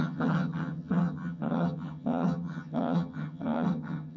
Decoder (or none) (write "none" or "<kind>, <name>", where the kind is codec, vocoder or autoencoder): vocoder, HiFi-GAN